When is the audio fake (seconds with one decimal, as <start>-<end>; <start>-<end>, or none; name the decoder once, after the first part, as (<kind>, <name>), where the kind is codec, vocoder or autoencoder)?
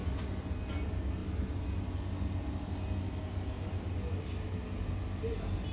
none